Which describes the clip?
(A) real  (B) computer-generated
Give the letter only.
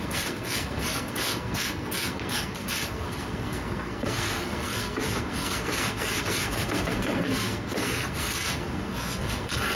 B